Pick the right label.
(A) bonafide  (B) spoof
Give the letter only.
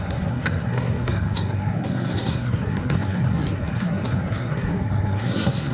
B